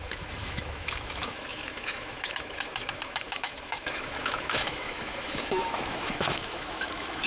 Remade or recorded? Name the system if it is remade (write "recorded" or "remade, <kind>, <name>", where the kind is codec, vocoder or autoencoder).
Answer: remade, autoencoder, DAC-VAE